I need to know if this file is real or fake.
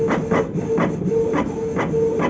real